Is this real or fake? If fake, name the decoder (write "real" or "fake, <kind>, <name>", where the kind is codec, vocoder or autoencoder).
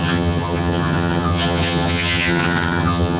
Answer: fake, vocoder, HiFi-GAN